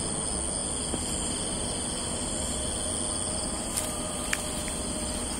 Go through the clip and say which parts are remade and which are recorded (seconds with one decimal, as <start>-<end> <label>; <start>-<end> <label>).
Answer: 0.0-5.4 recorded